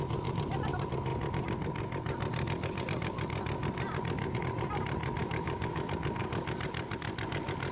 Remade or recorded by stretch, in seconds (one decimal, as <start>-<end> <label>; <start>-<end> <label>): 0.0-5.2 recorded; 5.2-5.9 remade; 5.9-7.7 recorded